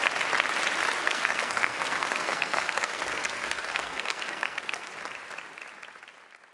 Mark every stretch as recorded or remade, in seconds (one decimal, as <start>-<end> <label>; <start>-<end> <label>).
0.0-1.0 recorded; 1.0-4.9 remade; 4.9-6.5 recorded